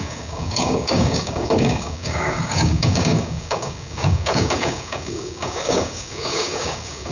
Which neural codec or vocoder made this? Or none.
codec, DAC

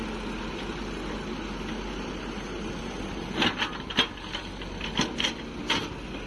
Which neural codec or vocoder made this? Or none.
none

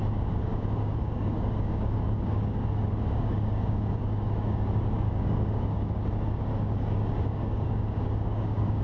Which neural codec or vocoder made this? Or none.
codec, DAC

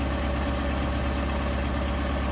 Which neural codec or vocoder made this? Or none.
none